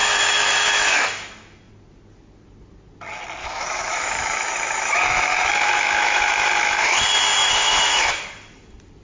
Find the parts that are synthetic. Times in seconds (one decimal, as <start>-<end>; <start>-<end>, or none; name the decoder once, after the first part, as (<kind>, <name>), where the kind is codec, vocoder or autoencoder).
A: 0.0-1.7 (autoencoder, DAC-VAE); 3.4-7.0; 7.4-8.0